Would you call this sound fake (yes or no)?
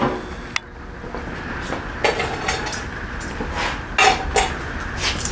no